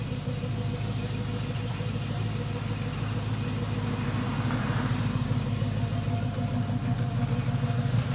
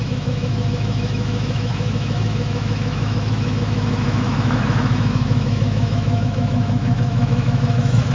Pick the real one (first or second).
first